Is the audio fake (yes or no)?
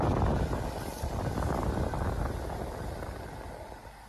no